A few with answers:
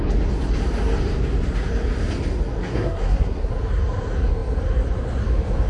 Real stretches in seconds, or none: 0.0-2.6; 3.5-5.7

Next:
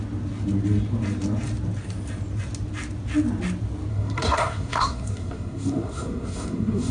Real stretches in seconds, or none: 0.0-3.9

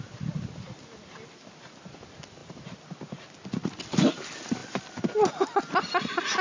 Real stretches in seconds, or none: 0.0-6.4